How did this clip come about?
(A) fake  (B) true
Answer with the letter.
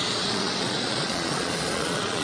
A